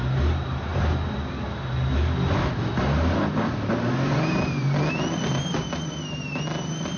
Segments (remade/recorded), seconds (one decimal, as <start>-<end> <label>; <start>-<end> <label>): 0.0-7.0 recorded